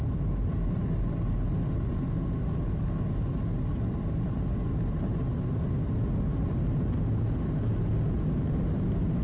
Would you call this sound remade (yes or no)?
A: no